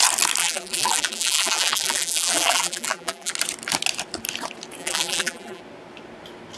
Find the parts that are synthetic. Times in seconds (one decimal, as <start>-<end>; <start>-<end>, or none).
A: 0.4-3.3; 4.8-5.6